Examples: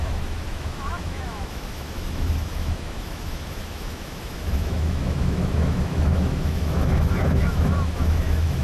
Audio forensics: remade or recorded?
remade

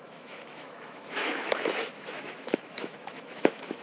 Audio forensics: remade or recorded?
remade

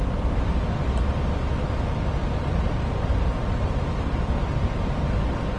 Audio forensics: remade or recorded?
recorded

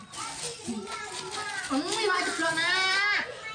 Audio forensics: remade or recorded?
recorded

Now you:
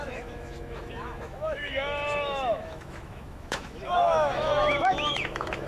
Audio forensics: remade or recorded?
remade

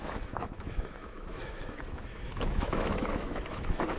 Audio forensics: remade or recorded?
remade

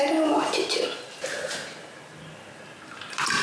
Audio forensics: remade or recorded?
recorded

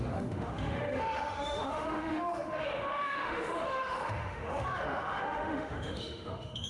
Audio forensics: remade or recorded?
remade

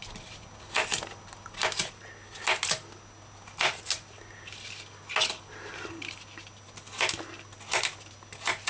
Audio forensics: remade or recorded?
recorded